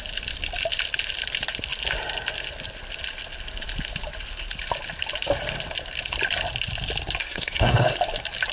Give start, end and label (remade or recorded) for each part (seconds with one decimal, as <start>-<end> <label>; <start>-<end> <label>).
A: 0.0-7.2 recorded; 7.2-8.0 remade; 8.0-8.5 recorded